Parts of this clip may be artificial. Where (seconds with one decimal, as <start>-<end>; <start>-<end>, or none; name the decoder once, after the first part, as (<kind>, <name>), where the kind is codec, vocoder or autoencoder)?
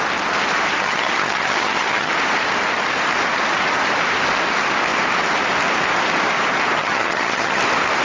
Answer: 0.8-2.1 (vocoder, HiFi-GAN); 6.8-7.6